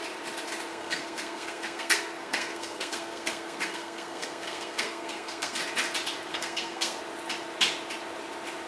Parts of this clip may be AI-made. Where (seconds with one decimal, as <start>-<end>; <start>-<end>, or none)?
0.7-5.6; 6.3-7.0